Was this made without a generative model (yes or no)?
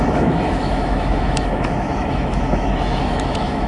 no